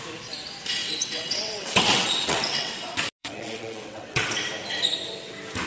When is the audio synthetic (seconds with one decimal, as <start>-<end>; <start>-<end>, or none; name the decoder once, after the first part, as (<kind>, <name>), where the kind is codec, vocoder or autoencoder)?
0.8-2.7 (vocoder, WaveNeXt); 3.2-4.3